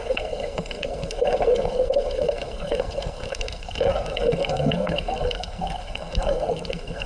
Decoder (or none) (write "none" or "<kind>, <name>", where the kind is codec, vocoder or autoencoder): codec, SNAC